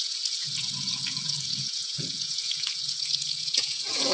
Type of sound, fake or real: fake